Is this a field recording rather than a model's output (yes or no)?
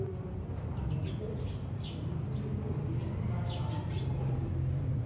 yes